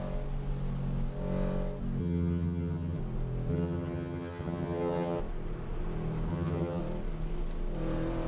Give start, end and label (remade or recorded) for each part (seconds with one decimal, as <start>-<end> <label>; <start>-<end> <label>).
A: 0.0-2.0 recorded; 2.0-3.0 remade; 3.0-3.5 recorded; 3.5-5.2 remade; 5.2-6.3 recorded; 6.3-6.8 remade; 6.8-8.3 recorded